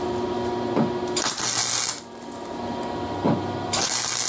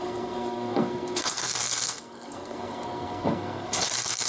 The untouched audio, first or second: first